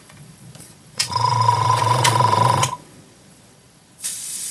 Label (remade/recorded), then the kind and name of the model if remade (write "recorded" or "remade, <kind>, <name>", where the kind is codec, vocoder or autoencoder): remade, vocoder, Vocos